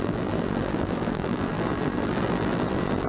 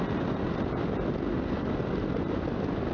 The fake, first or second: first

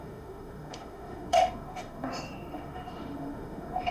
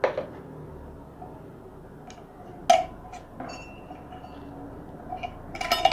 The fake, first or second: first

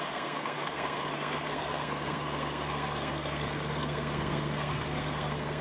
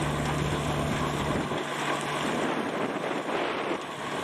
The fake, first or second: first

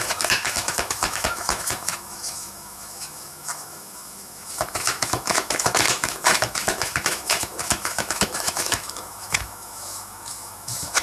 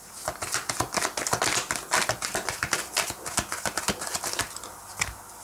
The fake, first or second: first